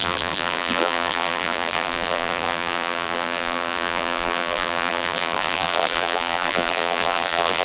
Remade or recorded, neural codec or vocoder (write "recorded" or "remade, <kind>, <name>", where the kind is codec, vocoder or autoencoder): remade, vocoder, BigVGAN v2